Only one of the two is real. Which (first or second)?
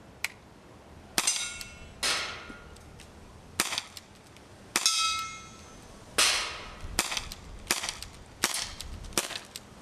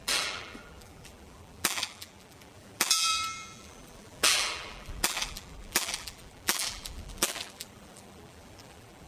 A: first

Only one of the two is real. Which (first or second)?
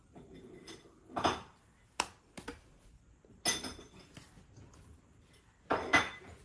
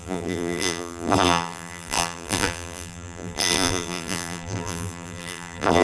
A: first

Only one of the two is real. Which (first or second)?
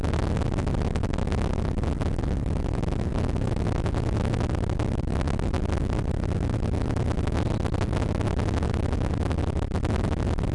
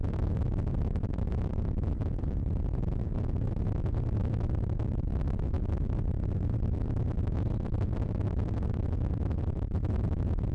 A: first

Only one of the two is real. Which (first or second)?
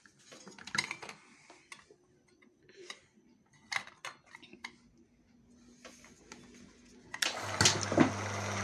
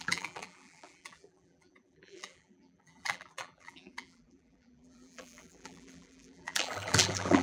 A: first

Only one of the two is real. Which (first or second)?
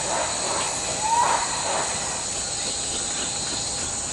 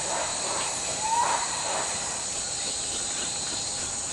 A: first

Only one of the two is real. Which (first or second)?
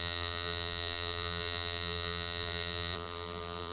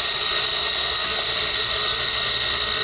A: second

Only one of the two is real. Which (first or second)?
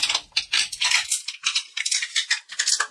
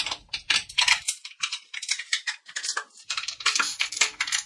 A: first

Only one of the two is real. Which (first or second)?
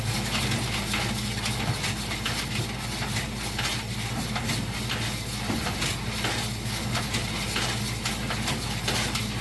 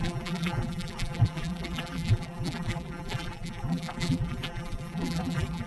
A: first